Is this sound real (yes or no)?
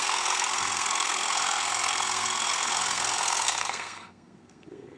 no